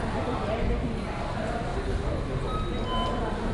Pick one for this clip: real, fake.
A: real